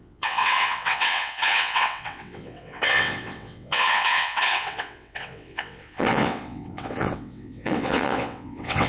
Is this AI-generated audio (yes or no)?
yes